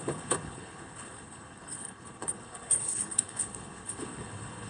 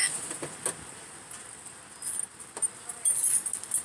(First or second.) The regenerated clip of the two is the first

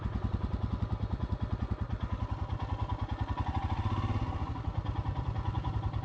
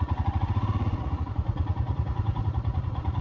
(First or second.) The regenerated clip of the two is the second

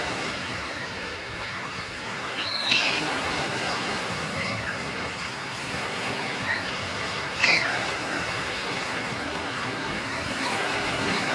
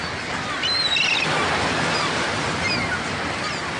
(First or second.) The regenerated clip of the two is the first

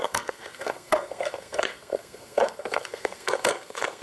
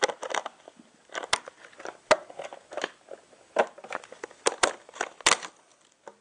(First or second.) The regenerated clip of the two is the first